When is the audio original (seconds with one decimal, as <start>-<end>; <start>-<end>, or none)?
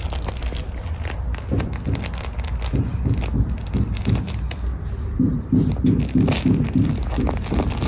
0.0-7.9